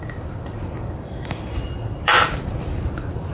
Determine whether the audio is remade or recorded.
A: remade